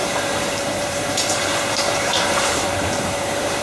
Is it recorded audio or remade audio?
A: remade